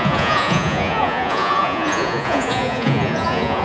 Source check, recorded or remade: remade